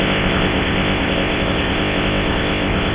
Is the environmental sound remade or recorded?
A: remade